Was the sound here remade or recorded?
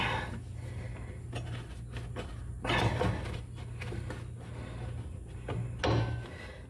recorded